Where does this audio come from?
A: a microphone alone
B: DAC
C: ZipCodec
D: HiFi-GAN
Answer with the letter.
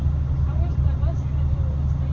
A